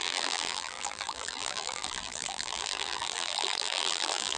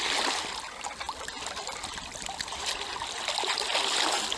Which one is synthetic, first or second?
first